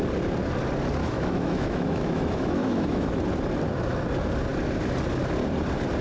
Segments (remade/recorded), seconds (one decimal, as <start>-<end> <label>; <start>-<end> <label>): 0.0-1.0 recorded; 1.0-3.2 remade; 3.2-6.0 recorded